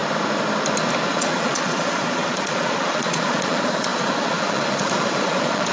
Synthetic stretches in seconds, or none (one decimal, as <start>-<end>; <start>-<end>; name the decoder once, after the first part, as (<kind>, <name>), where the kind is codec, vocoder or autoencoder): 1.1-5.7 (vocoder, Vocos)